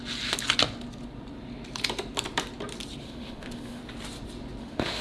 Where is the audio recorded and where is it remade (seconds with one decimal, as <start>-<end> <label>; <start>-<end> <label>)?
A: 0.0-3.0 recorded; 3.0-3.8 remade; 3.8-4.6 recorded; 4.6-5.0 remade